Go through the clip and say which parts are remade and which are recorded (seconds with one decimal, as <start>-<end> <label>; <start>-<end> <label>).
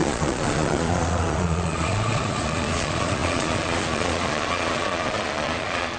0.0-6.0 remade